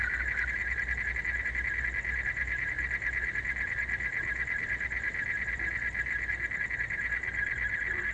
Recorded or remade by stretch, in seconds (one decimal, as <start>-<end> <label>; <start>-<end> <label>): 0.0-8.1 recorded